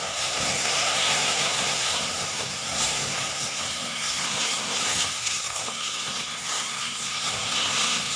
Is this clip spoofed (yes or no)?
yes